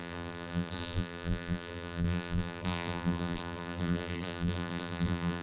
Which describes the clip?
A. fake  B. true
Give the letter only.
A